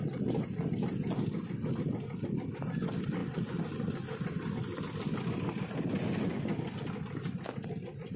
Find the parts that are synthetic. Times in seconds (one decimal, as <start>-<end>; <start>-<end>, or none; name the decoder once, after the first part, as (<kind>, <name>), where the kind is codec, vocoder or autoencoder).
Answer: none